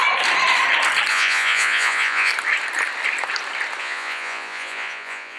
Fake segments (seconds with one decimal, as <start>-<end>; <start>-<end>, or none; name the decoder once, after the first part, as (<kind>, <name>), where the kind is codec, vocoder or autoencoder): 1.1-2.3 (vocoder, Vocos); 3.8-5.4